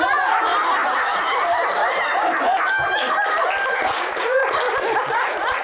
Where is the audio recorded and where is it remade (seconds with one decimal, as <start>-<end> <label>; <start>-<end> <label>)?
0.0-0.5 remade; 0.5-3.7 recorded; 3.7-4.4 remade; 4.4-5.1 recorded; 5.1-5.6 remade